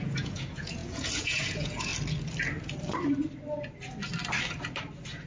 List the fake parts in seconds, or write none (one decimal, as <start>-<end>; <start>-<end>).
0.0-1.9